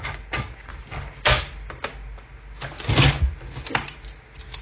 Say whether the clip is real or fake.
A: real